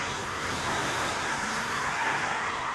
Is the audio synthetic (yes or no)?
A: yes